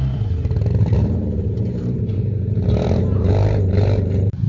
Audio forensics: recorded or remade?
remade